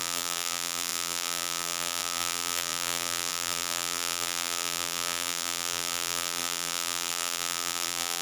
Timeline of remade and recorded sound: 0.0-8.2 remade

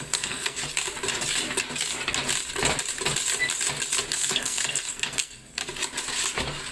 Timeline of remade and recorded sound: 0.0-0.6 remade; 0.6-4.1 recorded; 4.1-5.6 remade; 5.6-6.7 recorded

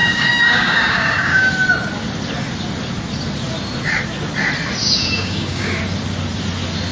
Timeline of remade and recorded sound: 0.0-1.5 remade; 1.5-4.8 recorded; 4.8-5.8 remade; 5.8-6.9 recorded

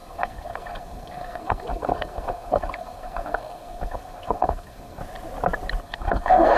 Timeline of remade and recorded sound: 0.0-5.0 remade; 5.0-5.8 recorded; 5.8-6.6 remade